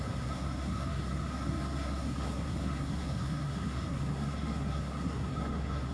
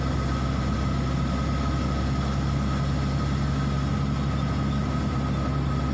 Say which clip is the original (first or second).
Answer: second